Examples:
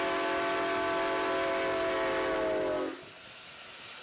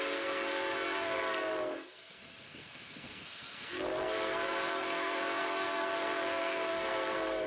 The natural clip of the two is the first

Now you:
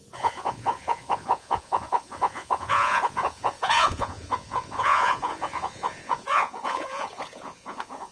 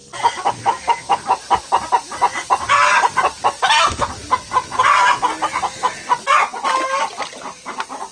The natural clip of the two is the second